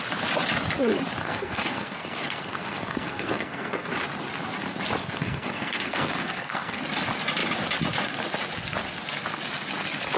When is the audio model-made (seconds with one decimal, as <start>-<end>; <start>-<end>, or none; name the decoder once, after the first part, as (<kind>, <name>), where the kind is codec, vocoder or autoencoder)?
1.2-3.9 (codec, SNAC); 5.0-6.8